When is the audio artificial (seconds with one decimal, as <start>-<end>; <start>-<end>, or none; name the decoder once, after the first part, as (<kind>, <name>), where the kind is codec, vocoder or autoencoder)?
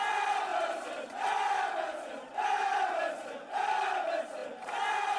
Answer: none